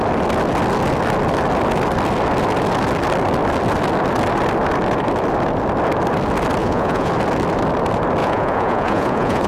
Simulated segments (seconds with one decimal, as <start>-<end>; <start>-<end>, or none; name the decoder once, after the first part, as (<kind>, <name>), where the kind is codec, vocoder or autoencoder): 6.6-7.1 (vocoder, Vocos); 8.2-9.5